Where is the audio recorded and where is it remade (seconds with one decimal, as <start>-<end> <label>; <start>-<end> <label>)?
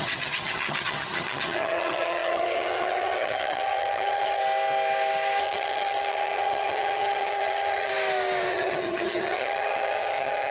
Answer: 0.0-4.4 remade; 4.4-5.4 recorded; 5.4-7.9 remade; 7.9-8.5 recorded; 8.5-10.5 remade